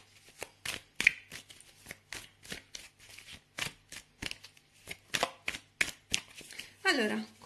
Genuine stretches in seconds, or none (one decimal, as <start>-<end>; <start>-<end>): 0.0-7.5